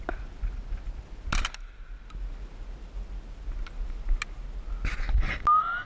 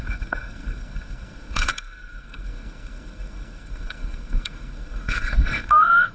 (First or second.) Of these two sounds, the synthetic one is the second